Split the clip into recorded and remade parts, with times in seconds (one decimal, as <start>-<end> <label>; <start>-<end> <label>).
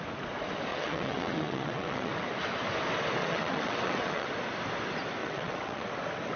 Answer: 0.0-0.7 recorded; 0.7-2.1 remade; 2.1-3.2 recorded; 3.2-4.3 remade; 4.3-5.2 recorded; 5.2-5.9 remade; 5.9-6.4 recorded